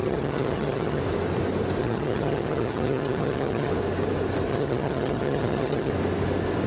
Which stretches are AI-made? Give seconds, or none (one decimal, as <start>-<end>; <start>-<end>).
0.0-1.0; 1.8-3.7; 4.5-5.9